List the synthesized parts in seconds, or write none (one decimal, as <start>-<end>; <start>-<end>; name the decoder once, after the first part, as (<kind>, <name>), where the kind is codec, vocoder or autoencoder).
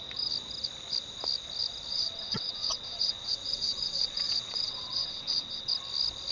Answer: 1.9-5.7 (vocoder, WaveNeXt)